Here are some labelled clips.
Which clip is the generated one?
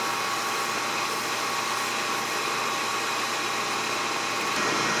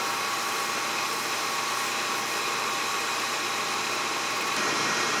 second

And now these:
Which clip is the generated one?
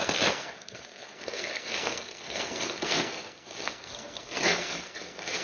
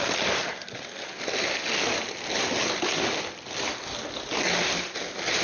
first